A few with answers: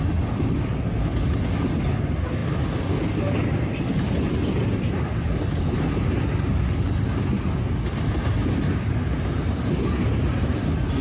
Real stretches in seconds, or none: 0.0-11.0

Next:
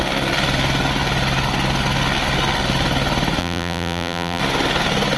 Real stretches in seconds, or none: 0.0-3.4; 4.4-5.2

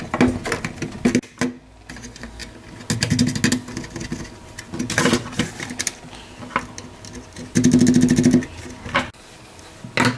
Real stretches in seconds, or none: 0.0-10.2

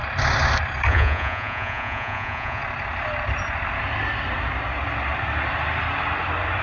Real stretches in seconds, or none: 0.0-0.9; 2.6-6.6

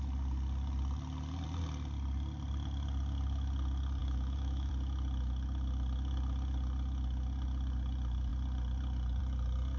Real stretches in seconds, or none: 0.0-4.0; 4.7-9.8

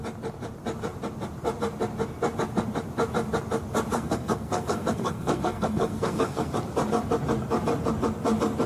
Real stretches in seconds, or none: 0.0-3.9; 6.5-8.7